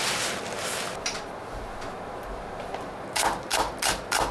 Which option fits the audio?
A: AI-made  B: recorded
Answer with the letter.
B